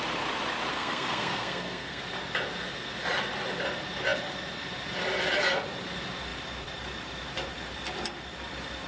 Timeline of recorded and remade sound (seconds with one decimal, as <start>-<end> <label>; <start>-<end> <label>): 0.0-0.7 recorded; 0.7-2.0 remade; 2.0-8.9 recorded